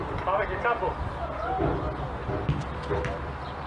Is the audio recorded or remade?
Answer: recorded